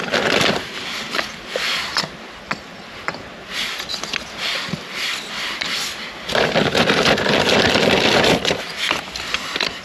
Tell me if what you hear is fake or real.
real